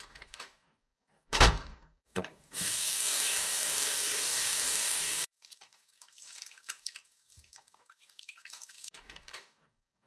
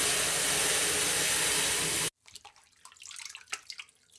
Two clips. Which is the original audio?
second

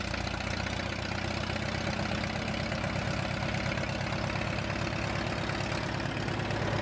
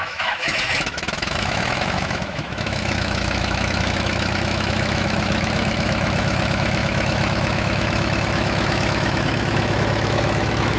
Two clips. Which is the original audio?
first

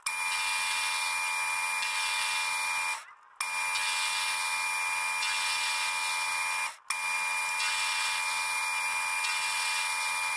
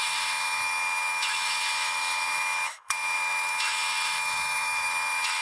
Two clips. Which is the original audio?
first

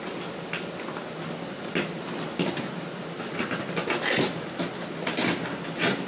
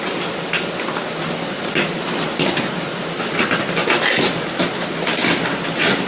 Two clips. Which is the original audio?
first